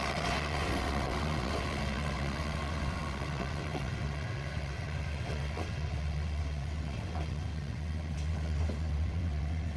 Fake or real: fake